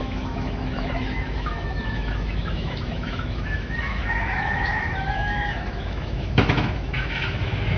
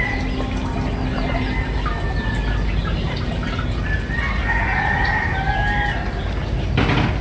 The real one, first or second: second